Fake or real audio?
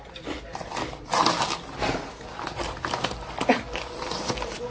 real